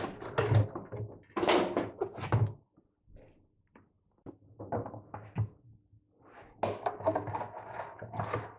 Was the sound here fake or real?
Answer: real